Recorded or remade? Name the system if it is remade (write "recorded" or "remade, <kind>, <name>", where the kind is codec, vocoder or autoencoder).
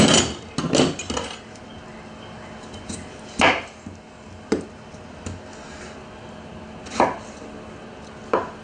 recorded